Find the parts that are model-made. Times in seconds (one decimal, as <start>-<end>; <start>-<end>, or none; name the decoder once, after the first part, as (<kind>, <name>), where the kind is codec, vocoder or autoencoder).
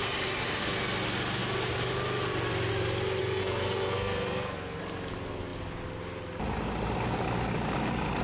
3.2-4.8 (codec, SNAC)